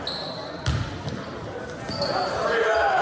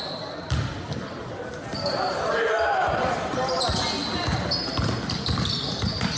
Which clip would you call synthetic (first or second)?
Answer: second